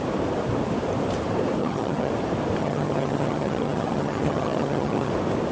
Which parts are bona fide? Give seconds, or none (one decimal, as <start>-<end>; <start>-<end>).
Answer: 0.0-1.6; 2.1-2.6; 5.1-5.5